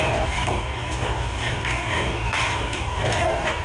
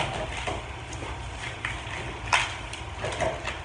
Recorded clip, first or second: second